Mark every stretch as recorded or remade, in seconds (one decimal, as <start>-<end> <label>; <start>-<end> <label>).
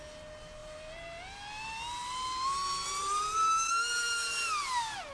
0.0-5.1 recorded